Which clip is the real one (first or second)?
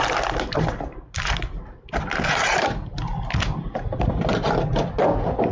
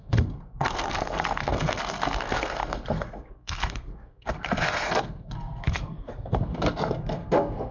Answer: first